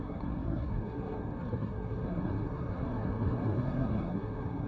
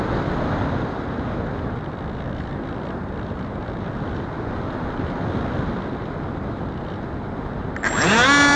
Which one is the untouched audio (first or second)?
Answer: second